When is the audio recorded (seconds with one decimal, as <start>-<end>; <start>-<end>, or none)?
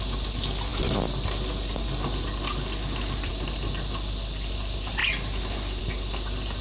0.0-6.6